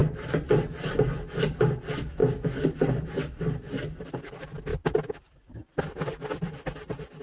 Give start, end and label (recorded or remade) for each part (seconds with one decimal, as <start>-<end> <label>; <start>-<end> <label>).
0.0-4.7 recorded; 4.7-5.8 remade; 5.8-7.2 recorded